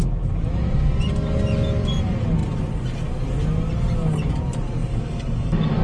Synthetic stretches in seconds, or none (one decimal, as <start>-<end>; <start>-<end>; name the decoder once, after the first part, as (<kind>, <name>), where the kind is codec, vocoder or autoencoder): 4.9-5.8 (codec, DAC)